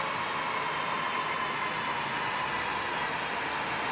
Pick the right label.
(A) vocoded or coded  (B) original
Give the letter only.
B